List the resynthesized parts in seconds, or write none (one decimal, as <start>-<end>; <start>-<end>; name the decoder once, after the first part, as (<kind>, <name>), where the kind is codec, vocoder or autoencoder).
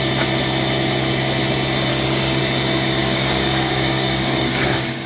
1.9-2.4 (codec, DAC); 3.0-5.1